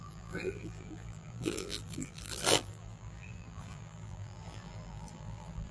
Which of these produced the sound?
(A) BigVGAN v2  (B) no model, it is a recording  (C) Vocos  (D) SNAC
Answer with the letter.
A